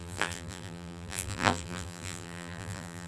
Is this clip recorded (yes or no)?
no